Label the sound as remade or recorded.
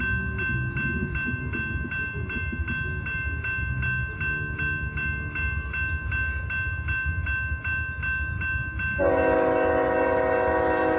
recorded